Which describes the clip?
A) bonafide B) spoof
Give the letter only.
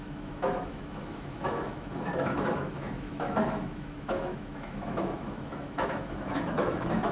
B